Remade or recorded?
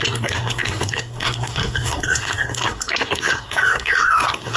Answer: remade